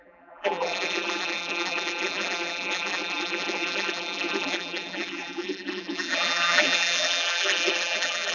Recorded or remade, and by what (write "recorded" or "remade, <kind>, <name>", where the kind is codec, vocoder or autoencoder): remade, vocoder, BigVGAN v2